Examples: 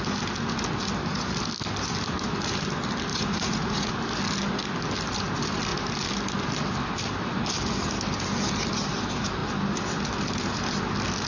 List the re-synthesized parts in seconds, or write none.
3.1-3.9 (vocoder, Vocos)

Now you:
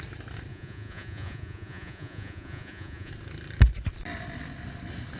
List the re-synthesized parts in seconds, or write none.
0.5-3.1 (vocoder, Vocos)